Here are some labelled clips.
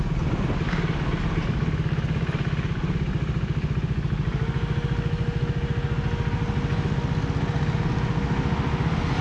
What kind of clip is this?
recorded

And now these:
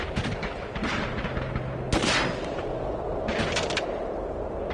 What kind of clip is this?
recorded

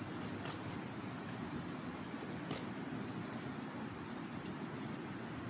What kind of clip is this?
recorded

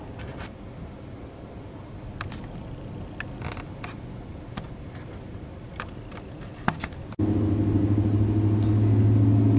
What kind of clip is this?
recorded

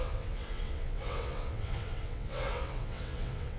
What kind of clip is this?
remade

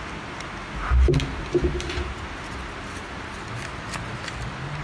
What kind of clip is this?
recorded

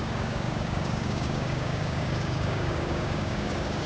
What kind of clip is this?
remade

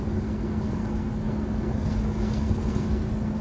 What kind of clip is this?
remade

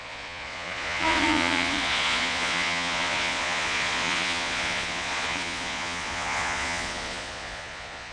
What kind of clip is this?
remade